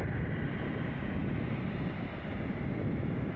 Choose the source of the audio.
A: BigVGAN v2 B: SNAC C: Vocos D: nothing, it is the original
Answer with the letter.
D